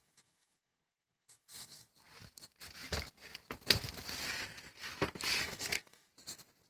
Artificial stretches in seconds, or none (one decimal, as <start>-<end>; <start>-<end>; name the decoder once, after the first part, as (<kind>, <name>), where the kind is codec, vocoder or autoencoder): 0.0-1.9 (codec, DAC); 5.4-6.1